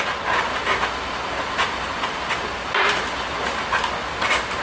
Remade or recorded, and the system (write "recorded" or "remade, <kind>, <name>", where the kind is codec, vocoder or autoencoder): recorded